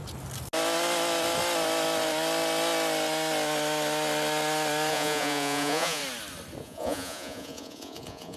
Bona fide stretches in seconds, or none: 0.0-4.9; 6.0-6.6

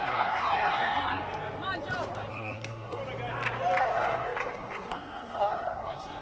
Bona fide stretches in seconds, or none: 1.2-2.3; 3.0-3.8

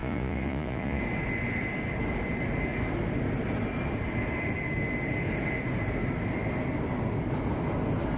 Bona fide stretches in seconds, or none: 1.0-8.2